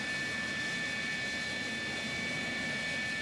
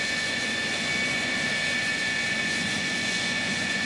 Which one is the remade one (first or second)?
second